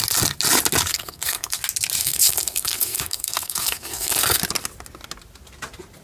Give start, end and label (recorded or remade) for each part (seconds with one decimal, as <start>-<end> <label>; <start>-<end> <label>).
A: 0.0-0.9 recorded; 0.9-1.6 remade; 1.6-2.0 recorded; 2.0-4.4 remade; 4.4-6.0 recorded